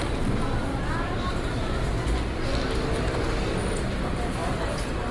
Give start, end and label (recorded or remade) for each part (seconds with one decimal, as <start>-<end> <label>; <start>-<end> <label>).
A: 0.0-5.1 recorded